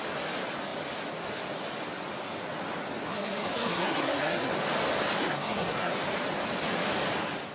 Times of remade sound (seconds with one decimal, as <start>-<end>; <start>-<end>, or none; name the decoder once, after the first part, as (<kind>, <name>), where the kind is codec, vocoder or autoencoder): 3.1-4.5 (codec, SNAC); 5.2-5.9